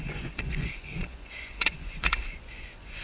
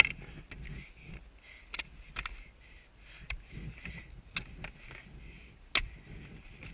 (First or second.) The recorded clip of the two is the second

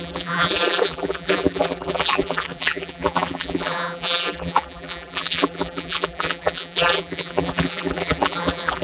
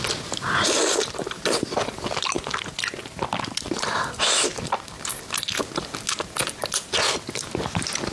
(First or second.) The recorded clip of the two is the second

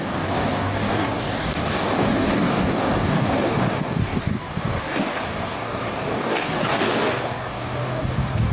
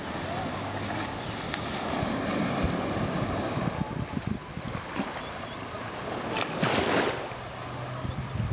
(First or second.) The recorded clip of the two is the second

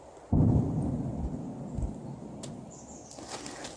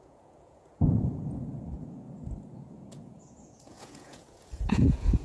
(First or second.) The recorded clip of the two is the first